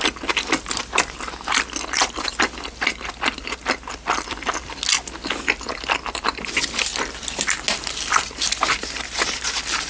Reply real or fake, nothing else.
real